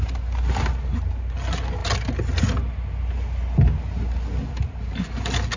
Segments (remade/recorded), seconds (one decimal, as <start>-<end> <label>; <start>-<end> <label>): 0.0-5.6 recorded